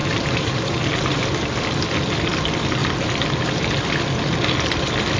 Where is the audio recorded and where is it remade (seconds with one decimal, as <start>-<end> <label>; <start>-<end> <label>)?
0.0-0.9 remade; 0.9-5.2 recorded